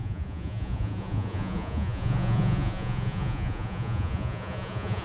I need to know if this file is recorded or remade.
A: remade